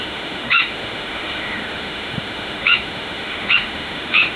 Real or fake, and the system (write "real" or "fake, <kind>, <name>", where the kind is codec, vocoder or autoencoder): fake, autoencoder, DAC-VAE